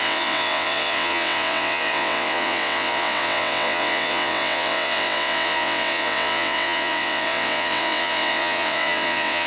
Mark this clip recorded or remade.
remade